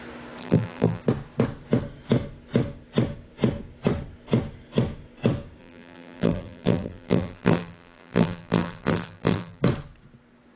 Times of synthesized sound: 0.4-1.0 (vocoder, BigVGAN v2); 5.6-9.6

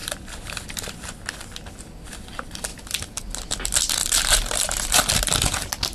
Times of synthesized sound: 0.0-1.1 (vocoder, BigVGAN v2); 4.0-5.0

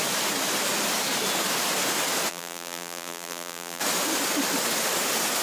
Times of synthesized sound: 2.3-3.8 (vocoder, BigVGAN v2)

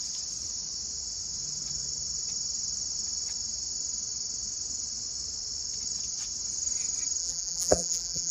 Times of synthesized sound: 7.2-8.3 (vocoder, BigVGAN v2)

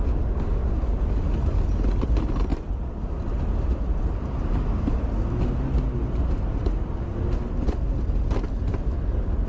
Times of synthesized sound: 2.5-5.2 (vocoder, BigVGAN v2)